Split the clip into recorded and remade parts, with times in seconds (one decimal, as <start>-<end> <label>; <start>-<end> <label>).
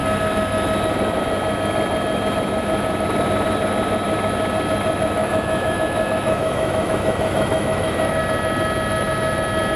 0.0-5.2 recorded; 5.2-8.2 remade; 8.2-9.8 recorded